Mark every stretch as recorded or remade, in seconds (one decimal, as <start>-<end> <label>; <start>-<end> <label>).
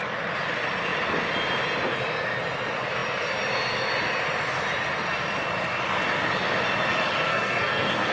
0.0-7.3 recorded; 7.3-8.1 remade